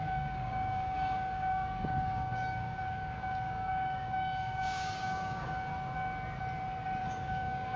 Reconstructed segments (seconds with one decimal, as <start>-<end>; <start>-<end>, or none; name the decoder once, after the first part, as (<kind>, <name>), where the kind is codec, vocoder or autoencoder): 0.0-5.7 (codec, DAC); 7.0-7.8